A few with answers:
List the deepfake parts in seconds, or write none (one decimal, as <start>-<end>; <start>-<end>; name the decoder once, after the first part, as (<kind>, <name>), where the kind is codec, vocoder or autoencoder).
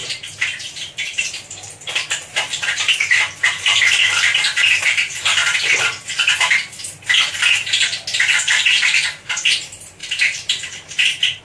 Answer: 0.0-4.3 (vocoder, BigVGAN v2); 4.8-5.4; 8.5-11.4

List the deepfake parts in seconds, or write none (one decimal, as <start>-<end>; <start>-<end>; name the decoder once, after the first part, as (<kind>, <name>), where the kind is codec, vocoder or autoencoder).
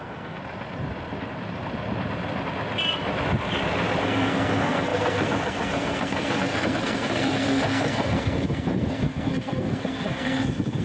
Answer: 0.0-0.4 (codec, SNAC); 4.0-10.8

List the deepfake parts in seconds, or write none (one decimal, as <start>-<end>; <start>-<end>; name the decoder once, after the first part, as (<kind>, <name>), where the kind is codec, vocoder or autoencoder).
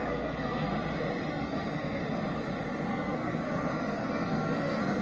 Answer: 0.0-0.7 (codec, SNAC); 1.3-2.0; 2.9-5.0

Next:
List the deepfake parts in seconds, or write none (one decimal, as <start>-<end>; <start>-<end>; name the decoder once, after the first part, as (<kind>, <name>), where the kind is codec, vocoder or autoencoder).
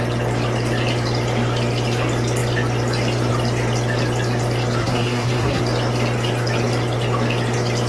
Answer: 4.8-5.6 (codec, SNAC)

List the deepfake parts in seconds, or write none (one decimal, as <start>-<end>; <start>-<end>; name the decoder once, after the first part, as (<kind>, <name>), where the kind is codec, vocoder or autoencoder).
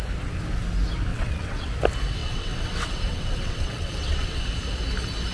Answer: 1.1-1.7 (vocoder, WaveNeXt); 2.2-4.4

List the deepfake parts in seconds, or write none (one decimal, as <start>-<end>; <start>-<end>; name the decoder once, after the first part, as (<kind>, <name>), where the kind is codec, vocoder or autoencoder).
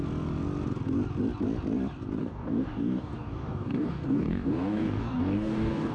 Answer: 2.2-5.9 (codec, DAC)